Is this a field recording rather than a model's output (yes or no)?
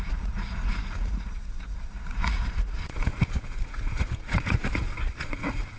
no